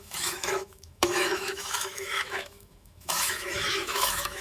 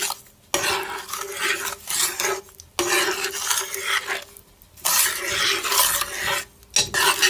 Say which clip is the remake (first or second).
first